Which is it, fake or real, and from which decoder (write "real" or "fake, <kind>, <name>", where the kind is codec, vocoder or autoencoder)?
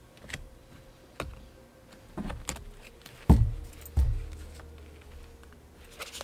real